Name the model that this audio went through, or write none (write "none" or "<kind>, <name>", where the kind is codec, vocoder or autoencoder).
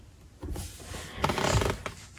none